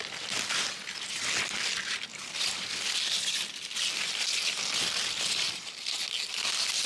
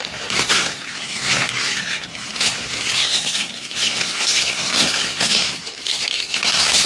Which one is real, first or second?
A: first